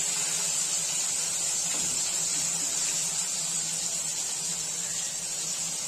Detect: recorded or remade recorded